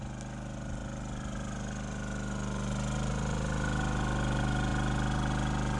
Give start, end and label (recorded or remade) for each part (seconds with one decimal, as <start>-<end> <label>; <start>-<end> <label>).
0.0-5.8 recorded